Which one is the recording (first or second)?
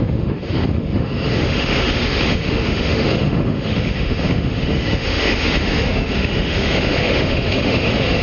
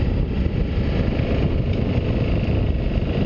second